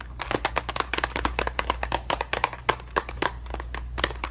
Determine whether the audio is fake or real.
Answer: fake